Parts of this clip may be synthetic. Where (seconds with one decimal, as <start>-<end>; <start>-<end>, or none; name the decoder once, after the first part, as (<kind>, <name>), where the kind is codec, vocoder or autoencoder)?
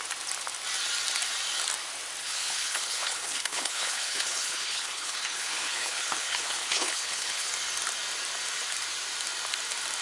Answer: 2.2-7.5 (codec, HILCodec)